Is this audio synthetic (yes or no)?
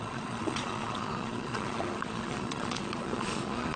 yes